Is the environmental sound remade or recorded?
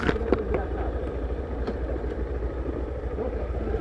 remade